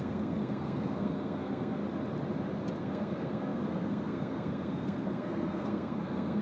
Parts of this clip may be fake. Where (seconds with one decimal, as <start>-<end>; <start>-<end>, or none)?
0.0-1.8; 2.8-6.4